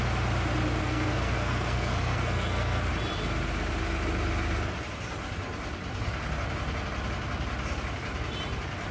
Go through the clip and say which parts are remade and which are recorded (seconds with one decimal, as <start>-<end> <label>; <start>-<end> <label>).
0.0-0.8 recorded; 0.8-2.9 remade; 2.9-8.9 recorded